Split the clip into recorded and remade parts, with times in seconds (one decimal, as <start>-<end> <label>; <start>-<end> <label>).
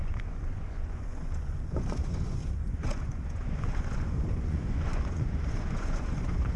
0.0-6.6 remade